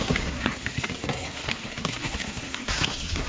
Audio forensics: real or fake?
fake